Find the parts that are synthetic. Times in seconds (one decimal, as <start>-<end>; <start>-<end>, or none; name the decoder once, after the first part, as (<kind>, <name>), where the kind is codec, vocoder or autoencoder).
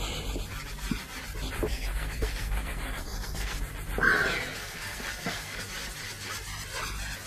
1.7-3.6 (codec, SNAC); 4.6-5.6